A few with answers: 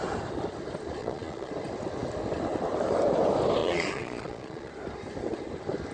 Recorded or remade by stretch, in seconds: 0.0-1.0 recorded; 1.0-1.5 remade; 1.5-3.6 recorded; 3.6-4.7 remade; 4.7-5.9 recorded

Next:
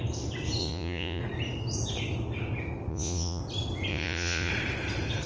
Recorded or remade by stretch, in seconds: 0.0-0.6 recorded; 0.6-1.2 remade; 1.2-2.9 recorded; 2.9-3.4 remade; 3.4-3.9 recorded; 3.9-4.5 remade; 4.5-5.3 recorded

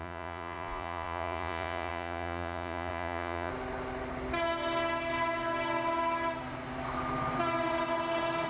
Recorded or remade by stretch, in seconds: 0.0-3.5 remade; 3.5-8.5 recorded

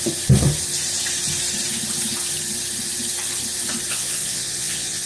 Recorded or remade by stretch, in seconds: 0.0-3.9 recorded; 3.9-5.1 remade

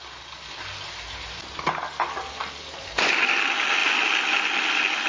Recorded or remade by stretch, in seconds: 0.0-5.1 recorded

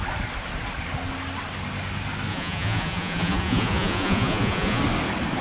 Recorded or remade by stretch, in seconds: 0.0-2.3 recorded; 2.3-4.8 remade; 4.8-5.4 recorded

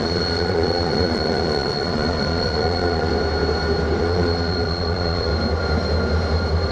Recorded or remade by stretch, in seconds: 0.0-3.1 remade; 3.1-4.0 recorded; 4.0-5.3 remade; 5.3-6.7 recorded